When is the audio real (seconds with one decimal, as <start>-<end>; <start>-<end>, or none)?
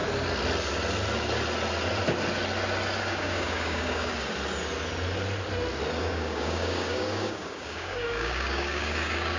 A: 0.0-3.0; 4.1-6.0